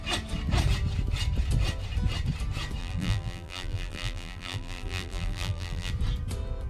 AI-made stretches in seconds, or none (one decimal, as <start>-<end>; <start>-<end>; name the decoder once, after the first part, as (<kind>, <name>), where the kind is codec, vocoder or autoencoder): 2.8-5.9 (vocoder, BigVGAN v2)